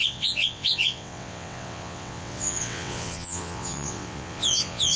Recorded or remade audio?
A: remade